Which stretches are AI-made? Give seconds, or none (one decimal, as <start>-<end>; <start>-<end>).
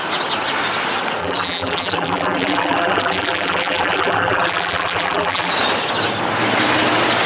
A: 1.2-5.5